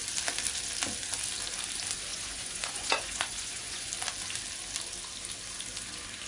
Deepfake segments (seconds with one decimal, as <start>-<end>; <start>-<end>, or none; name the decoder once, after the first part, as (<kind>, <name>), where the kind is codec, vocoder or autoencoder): 2.1-3.9 (vocoder, Vocos)